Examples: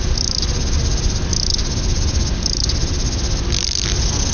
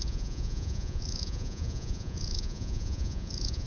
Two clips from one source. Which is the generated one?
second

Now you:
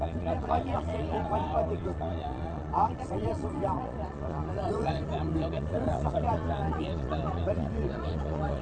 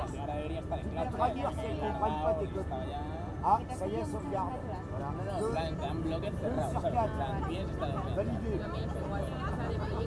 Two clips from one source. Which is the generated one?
first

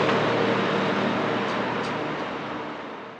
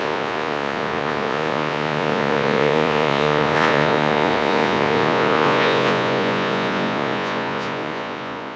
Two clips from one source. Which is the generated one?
second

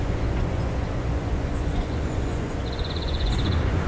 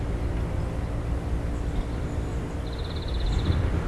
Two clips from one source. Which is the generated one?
first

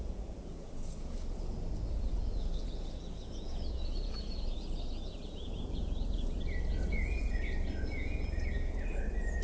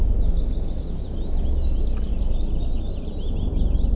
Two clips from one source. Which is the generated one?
first